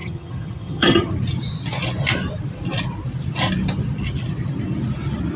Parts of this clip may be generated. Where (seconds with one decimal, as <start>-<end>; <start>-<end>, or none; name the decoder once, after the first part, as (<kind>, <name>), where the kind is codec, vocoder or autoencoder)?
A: 0.0-1.1 (vocoder, HiFi-GAN)